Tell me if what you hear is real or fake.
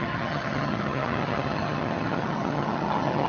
fake